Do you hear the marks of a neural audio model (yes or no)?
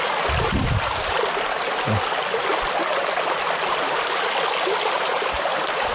no